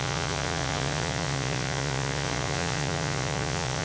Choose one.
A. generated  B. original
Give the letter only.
A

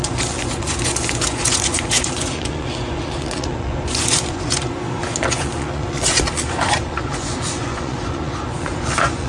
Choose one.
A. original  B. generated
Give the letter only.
B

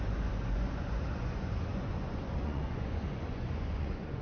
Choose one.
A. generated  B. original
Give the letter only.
A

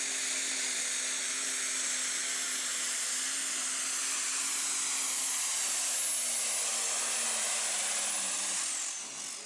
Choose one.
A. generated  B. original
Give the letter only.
B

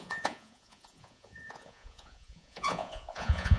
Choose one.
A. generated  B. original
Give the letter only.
A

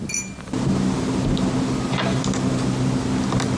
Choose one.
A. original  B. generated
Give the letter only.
A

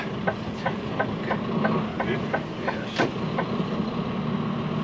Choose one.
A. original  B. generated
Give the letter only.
A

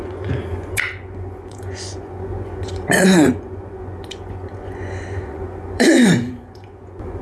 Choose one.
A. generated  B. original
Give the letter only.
A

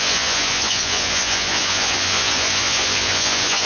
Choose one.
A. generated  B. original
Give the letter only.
A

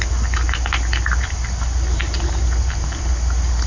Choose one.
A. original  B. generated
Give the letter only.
A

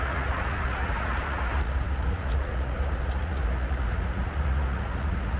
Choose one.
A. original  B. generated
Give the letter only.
B